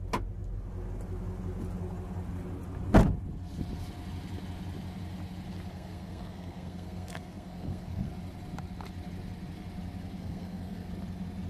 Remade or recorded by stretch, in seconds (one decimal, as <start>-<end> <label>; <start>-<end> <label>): 0.0-5.7 recorded; 5.7-8.1 remade; 8.1-10.2 recorded; 10.2-10.9 remade; 10.9-11.5 recorded